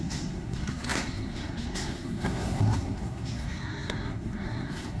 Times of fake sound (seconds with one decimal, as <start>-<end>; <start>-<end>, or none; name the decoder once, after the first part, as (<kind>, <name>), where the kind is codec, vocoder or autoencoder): 0.0-5.0 (codec, SNAC)